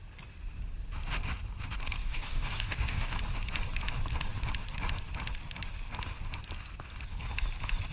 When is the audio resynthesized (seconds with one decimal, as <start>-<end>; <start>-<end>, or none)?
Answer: 2.0-3.2